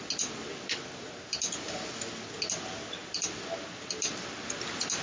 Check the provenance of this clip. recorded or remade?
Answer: recorded